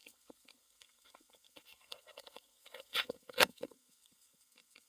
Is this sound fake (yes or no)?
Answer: yes